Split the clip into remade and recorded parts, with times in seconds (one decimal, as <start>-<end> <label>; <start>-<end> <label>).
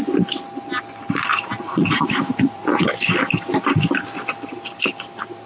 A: 0.0-1.3 recorded; 1.3-2.9 remade; 2.9-5.5 recorded